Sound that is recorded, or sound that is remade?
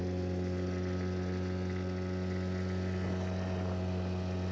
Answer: recorded